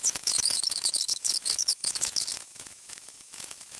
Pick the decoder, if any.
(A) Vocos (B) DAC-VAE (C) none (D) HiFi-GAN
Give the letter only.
B